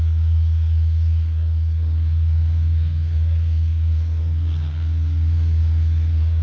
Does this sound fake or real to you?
fake